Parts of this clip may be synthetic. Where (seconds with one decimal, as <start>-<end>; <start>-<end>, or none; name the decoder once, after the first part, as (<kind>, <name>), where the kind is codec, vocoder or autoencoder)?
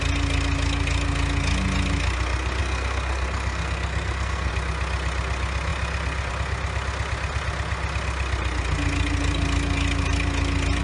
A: 2.6-4.5 (codec, SNAC)